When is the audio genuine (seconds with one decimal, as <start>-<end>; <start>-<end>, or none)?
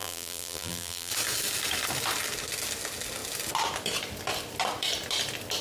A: 1.1-5.6